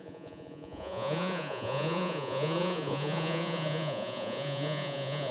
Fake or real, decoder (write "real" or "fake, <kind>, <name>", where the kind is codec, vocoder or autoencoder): fake, vocoder, Vocos